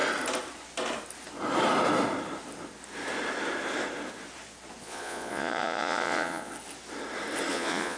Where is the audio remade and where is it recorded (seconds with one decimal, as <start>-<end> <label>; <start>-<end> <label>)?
0.0-4.8 recorded; 4.8-6.5 remade; 6.5-7.5 recorded; 7.5-8.0 remade